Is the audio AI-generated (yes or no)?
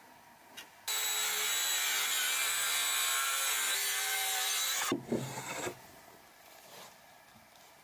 no